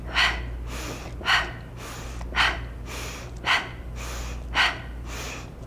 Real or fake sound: real